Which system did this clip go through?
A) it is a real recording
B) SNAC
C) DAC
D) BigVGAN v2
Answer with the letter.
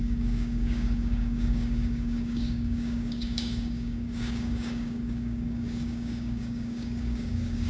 C